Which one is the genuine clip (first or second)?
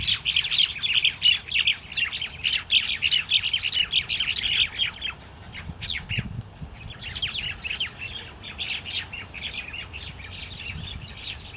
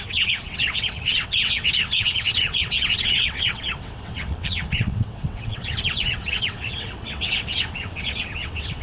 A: first